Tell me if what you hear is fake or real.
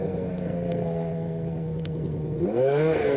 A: fake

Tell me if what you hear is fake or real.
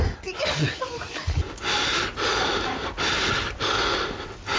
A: real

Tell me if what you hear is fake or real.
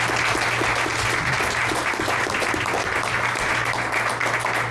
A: real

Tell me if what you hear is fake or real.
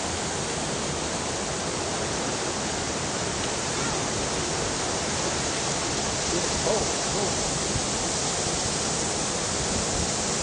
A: real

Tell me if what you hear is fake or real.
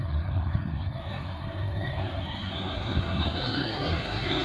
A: fake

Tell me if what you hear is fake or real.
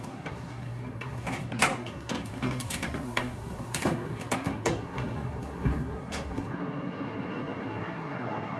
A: fake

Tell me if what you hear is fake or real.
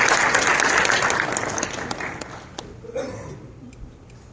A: real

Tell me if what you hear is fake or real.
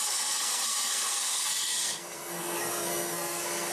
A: fake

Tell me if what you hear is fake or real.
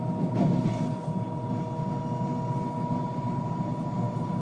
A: real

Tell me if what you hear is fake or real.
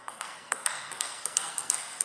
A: fake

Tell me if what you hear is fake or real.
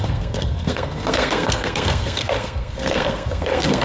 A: fake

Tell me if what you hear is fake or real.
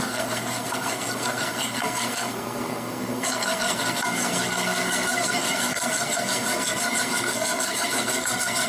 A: fake